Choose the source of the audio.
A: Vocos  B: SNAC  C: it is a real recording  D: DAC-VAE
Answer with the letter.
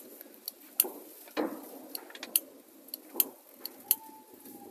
C